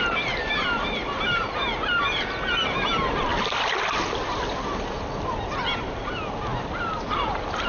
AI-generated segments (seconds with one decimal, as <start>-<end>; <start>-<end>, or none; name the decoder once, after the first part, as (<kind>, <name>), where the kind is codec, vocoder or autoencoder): none